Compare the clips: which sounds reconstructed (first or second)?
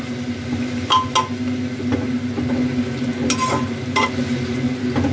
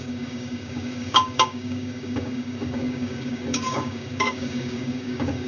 second